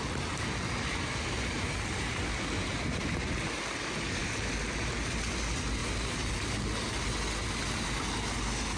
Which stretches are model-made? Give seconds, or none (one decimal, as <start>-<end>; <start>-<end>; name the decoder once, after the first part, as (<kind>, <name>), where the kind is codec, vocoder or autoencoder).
4.2-4.8 (vocoder, BigVGAN v2)